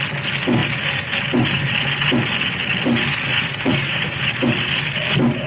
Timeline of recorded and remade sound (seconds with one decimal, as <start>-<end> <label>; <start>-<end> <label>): 0.0-3.3 recorded; 3.3-4.2 remade; 4.2-5.5 recorded